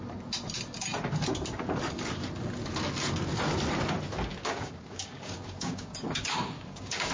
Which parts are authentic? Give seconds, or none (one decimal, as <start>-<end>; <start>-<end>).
0.0-4.3